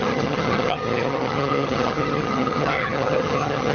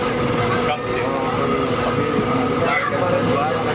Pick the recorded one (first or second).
second